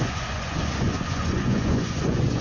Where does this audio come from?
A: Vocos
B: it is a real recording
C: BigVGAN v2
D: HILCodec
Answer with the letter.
A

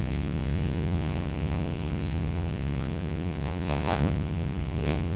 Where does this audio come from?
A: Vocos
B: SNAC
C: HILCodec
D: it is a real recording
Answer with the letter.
A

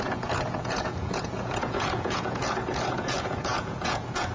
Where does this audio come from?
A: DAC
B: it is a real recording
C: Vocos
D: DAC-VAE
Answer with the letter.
C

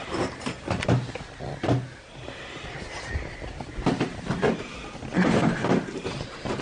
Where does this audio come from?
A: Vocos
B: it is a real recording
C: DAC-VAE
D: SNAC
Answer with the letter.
B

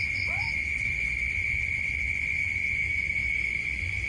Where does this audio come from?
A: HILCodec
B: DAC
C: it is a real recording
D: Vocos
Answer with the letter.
D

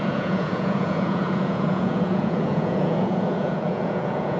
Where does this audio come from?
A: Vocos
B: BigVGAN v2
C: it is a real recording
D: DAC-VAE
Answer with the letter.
A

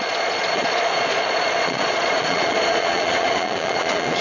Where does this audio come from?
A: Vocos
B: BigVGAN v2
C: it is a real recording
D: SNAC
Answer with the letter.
A